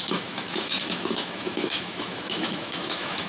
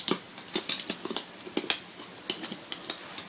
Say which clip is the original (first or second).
second